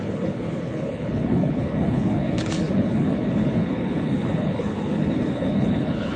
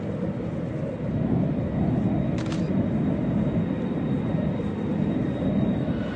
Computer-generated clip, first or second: first